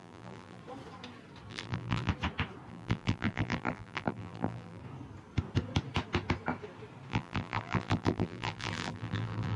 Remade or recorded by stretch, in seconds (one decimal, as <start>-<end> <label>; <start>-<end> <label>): 0.0-0.6 remade; 0.6-1.5 recorded; 1.5-2.1 remade; 2.1-2.7 recorded; 2.7-4.8 remade; 4.8-7.1 recorded; 7.1-9.6 remade